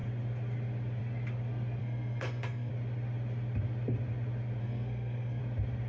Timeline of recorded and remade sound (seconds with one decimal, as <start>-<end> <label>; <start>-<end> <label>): 0.0-1.8 recorded; 1.8-2.7 remade; 2.7-4.6 recorded; 4.6-5.4 remade; 5.4-5.9 recorded